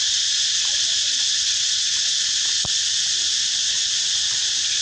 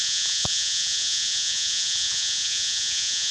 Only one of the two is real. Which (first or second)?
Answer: first